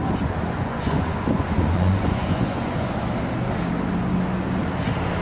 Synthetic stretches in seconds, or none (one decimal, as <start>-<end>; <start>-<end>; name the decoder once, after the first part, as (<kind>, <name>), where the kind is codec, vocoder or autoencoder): 0.0-2.8 (vocoder, Vocos)